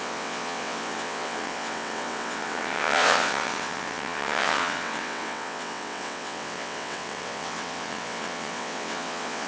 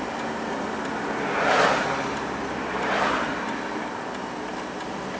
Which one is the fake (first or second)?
first